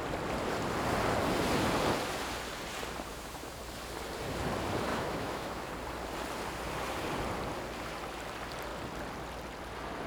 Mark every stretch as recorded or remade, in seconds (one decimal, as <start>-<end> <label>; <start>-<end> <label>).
0.0-3.1 recorded; 3.1-3.6 remade; 3.6-4.9 recorded; 4.9-5.7 remade; 5.7-10.1 recorded

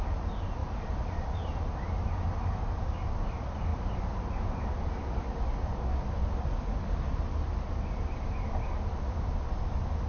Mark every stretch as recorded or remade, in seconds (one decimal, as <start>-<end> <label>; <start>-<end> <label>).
0.0-10.1 recorded

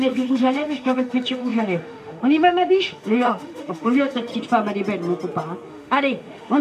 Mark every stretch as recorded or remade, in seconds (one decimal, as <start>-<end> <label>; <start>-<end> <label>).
0.0-4.3 remade; 4.3-5.7 recorded; 5.7-6.6 remade

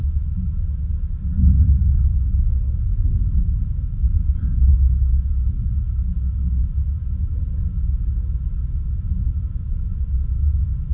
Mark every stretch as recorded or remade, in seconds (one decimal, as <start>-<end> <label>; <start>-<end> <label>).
0.0-0.9 remade; 0.9-4.5 recorded; 4.5-5.3 remade; 5.3-10.9 recorded

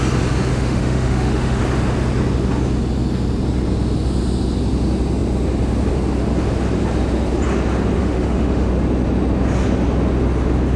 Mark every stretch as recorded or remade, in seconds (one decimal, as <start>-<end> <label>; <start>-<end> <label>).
0.0-0.5 recorded; 0.5-1.6 remade; 1.6-8.0 recorded; 8.0-8.7 remade; 8.7-10.8 recorded

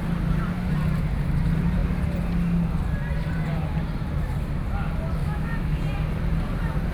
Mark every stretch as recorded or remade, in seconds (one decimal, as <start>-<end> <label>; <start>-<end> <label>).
0.0-5.2 recorded; 5.2-5.8 remade; 5.8-6.9 recorded